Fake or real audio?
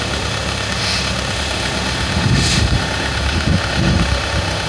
fake